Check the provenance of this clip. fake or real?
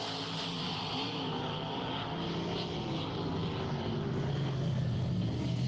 real